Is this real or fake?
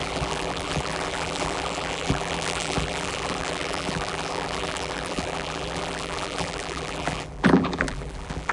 fake